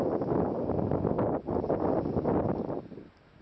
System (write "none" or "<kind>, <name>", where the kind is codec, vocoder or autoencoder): none